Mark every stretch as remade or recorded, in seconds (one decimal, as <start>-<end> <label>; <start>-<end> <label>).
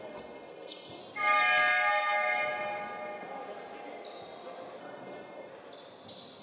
0.0-1.0 remade; 1.0-4.8 recorded; 4.8-5.5 remade; 5.5-6.4 recorded